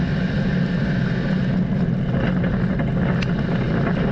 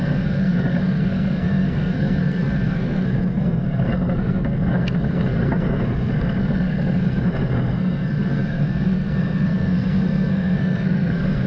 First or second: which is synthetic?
second